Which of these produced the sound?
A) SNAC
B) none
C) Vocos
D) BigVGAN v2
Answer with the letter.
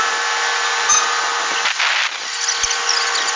B